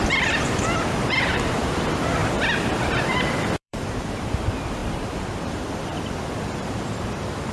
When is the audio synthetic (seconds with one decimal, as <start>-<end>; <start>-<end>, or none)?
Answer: 0.0-7.5